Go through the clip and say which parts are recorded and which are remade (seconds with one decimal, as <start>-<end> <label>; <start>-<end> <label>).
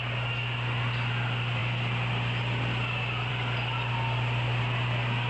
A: 0.0-5.3 recorded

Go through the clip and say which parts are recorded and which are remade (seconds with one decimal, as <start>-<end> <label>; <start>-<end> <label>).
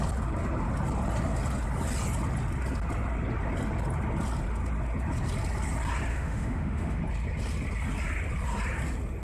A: 0.0-6.1 recorded; 6.1-7.0 remade; 7.0-9.2 recorded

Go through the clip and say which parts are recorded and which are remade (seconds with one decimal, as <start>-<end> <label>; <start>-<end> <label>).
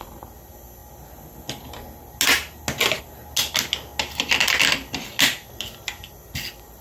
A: 0.0-6.8 recorded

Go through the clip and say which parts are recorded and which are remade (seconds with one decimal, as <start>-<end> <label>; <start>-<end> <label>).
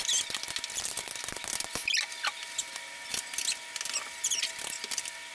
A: 0.0-5.3 recorded